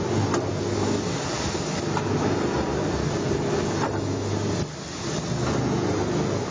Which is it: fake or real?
real